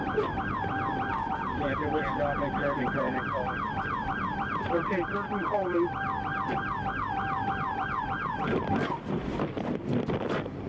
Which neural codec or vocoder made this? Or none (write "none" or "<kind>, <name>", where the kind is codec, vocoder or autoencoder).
vocoder, BigVGAN v2